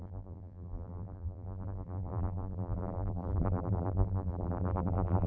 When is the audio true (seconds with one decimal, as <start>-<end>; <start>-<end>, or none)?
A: none